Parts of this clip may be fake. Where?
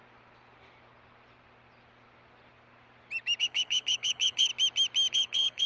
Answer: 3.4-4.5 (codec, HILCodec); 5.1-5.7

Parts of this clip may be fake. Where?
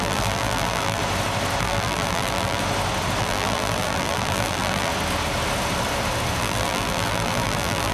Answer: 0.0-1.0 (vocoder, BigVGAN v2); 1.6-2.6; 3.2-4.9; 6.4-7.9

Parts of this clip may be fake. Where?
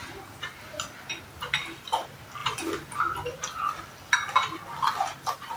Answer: none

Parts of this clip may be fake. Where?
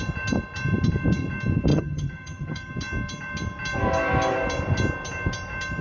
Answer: 1.7-2.7 (vocoder, HiFi-GAN)